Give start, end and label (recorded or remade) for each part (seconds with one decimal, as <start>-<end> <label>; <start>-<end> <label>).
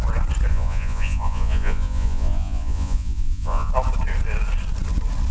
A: 0.0-0.5 recorded; 0.5-3.7 remade; 3.7-5.3 recorded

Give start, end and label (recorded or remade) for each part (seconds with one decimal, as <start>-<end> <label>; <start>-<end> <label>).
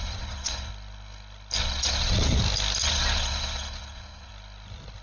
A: 0.0-0.7 remade; 0.7-1.6 recorded; 1.6-2.4 remade; 2.4-2.8 recorded; 2.8-4.3 remade; 4.3-5.0 recorded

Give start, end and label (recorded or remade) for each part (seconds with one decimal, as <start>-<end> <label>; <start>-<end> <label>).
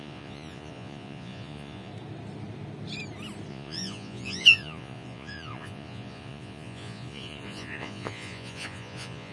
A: 0.0-1.9 remade; 1.9-3.5 recorded; 3.5-9.3 remade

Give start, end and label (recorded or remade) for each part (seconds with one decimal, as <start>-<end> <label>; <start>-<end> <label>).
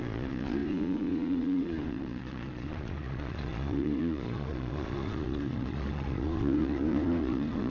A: 0.0-7.7 remade